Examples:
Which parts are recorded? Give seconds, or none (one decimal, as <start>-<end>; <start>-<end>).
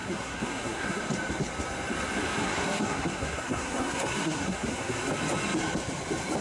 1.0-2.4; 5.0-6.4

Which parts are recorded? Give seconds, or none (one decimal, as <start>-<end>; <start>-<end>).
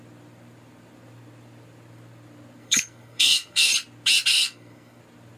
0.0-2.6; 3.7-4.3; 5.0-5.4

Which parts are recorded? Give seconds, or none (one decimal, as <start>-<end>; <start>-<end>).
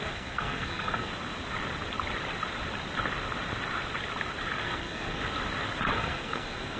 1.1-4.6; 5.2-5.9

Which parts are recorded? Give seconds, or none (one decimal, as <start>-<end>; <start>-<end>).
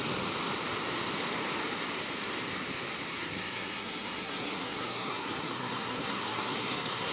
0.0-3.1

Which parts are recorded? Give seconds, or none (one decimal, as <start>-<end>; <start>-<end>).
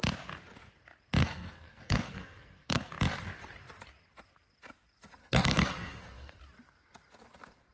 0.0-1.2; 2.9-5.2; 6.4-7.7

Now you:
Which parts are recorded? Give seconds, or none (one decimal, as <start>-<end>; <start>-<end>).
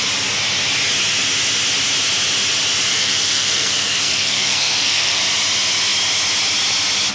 0.0-2.9; 5.2-7.1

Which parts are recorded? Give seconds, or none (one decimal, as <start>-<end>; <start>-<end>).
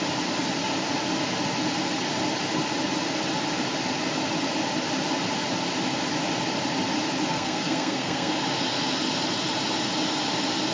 0.0-7.3; 8.3-10.7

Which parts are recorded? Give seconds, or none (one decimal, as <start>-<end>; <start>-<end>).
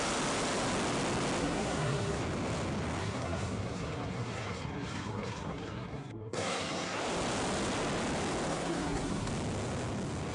0.0-1.4; 2.2-3.0; 7.0-8.5; 9.3-10.3